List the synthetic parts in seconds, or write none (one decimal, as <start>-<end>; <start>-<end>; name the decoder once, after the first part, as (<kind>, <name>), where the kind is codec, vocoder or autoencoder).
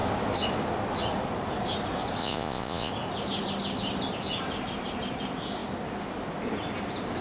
2.2-2.9 (vocoder, Vocos)